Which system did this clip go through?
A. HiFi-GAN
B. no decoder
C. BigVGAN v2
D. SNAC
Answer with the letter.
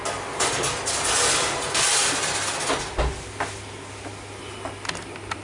B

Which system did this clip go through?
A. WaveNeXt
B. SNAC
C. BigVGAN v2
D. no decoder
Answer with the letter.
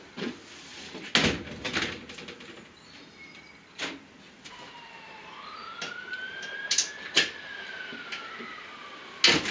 D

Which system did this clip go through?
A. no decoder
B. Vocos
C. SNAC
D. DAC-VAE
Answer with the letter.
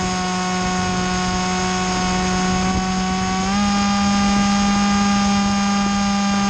A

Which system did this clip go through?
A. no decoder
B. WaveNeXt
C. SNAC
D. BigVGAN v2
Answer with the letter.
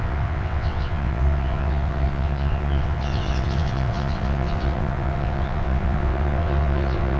B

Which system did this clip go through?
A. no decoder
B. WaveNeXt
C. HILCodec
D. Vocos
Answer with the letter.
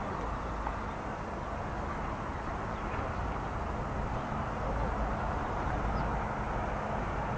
A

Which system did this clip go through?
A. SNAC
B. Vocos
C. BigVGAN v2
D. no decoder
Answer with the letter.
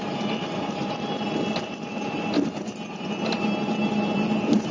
D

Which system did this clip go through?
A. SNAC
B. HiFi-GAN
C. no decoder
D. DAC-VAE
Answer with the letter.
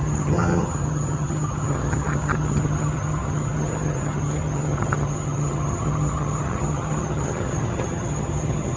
B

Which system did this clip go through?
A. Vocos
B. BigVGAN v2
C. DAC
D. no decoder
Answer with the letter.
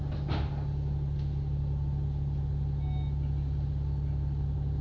D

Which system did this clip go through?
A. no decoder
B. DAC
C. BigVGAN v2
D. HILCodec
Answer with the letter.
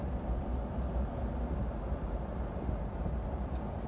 A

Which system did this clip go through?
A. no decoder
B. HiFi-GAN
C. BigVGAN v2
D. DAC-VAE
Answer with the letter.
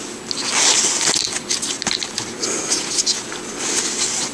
A